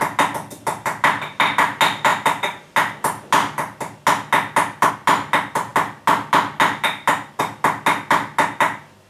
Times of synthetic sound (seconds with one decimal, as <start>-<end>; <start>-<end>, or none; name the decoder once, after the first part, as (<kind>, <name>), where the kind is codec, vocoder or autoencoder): none